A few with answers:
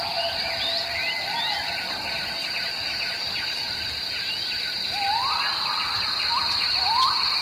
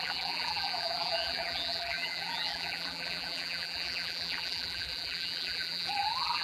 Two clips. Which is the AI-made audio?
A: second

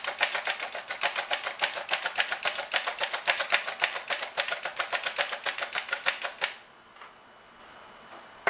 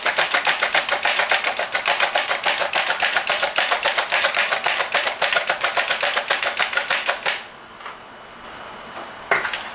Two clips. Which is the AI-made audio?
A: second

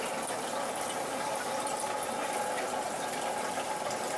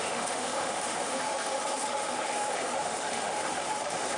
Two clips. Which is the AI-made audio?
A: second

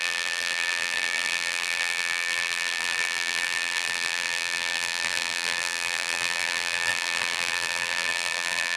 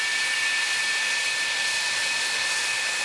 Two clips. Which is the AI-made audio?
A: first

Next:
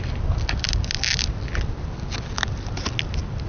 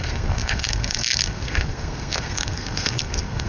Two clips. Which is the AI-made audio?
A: second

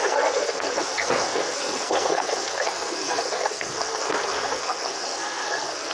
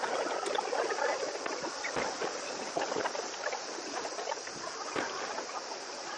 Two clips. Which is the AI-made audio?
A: first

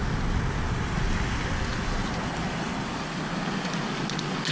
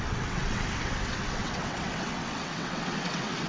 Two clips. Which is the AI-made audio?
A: second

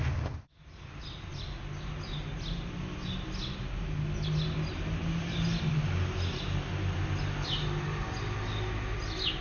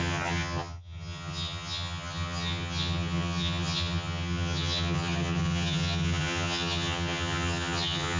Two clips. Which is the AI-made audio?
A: second